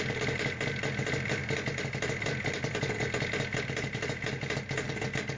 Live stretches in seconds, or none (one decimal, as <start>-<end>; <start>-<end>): 0.0-1.4; 4.6-5.4